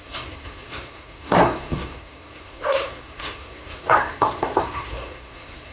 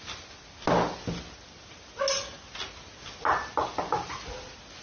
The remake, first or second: first